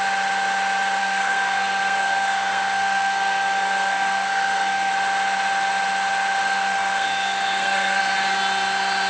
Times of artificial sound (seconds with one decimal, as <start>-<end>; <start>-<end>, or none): 1.0-4.9; 6.4-8.0